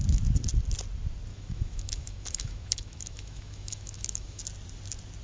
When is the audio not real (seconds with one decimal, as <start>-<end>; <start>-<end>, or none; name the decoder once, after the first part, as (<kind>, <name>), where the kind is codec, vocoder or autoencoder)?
1.3-4.4 (autoencoder, DAC-VAE)

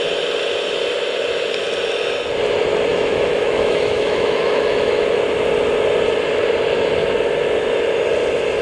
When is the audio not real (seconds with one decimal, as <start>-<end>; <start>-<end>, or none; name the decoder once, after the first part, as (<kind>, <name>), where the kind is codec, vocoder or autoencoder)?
2.9-4.9 (autoencoder, DAC-VAE)